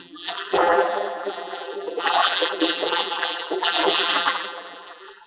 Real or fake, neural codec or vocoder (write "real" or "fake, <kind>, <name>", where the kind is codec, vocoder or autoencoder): fake, vocoder, BigVGAN v2